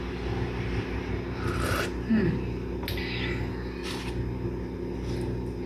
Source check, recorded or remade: recorded